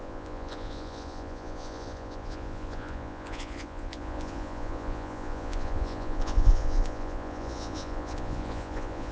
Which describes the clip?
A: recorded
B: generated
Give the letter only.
B